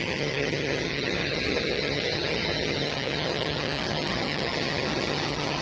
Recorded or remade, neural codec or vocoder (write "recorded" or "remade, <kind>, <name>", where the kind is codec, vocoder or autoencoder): remade, vocoder, HiFi-GAN